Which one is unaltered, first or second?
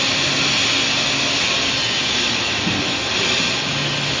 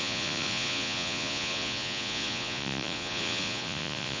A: first